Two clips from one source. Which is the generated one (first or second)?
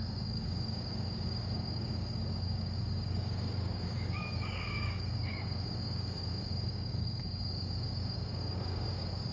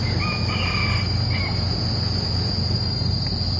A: first